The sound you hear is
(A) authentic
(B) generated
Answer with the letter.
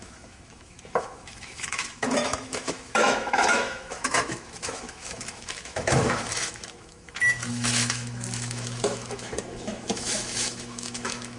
B